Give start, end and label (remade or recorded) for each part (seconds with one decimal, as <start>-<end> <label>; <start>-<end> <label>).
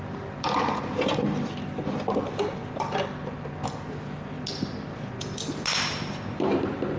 0.0-7.0 recorded